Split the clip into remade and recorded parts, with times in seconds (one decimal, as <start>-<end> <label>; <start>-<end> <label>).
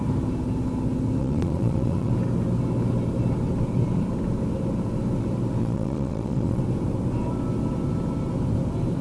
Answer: 0.0-1.2 recorded; 1.2-2.1 remade; 2.1-5.6 recorded; 5.6-6.6 remade; 6.6-9.0 recorded